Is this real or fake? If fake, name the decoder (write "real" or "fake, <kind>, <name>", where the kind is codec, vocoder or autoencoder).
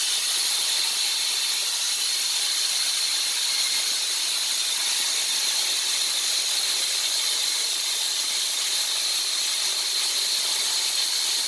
real